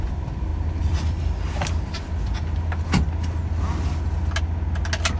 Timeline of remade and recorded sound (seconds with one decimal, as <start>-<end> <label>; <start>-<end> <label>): 0.0-5.2 recorded